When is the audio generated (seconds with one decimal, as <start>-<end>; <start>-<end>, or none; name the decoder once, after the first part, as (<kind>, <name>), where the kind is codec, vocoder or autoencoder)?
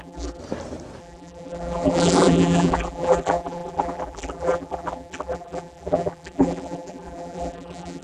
0.0-0.4 (vocoder, BigVGAN v2); 1.0-8.0